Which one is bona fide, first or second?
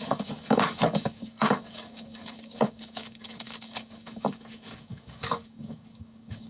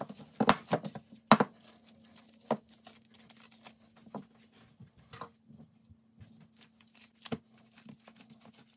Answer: second